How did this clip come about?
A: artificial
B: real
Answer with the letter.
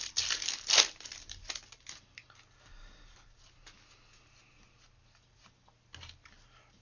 B